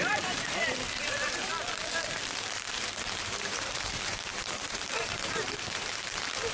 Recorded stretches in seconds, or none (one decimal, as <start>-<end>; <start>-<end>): 1.5-2.7